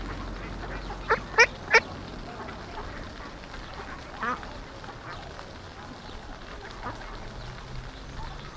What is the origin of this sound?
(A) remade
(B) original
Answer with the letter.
B